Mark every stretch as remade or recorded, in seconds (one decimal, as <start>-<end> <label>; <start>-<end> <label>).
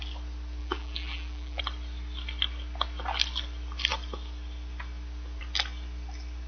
0.0-0.6 recorded; 0.6-1.6 remade; 1.6-6.5 recorded